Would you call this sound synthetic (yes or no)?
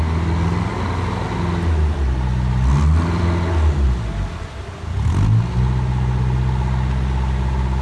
no